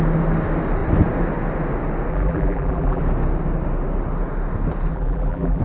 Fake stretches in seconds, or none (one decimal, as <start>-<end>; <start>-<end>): 2.1-3.0; 4.9-5.6